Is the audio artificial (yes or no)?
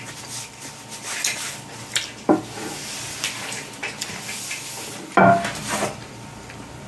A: no